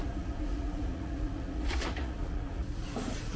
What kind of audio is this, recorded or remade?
remade